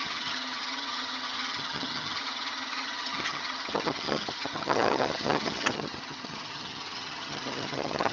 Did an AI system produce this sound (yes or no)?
yes